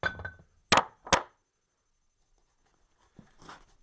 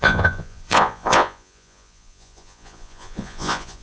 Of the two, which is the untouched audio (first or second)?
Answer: first